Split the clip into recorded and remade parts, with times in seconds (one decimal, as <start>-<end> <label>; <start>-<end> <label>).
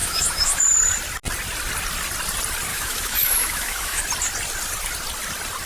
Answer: 0.0-0.6 remade; 0.6-2.7 recorded; 2.7-4.0 remade; 4.0-5.7 recorded